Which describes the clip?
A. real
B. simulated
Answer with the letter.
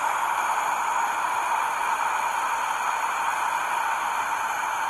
A